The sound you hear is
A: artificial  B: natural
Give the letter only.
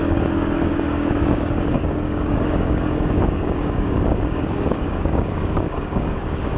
A